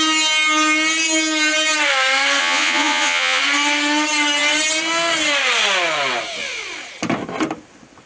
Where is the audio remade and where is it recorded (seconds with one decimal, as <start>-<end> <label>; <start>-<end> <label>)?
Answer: 0.0-2.4 recorded; 2.4-3.4 remade; 3.4-8.1 recorded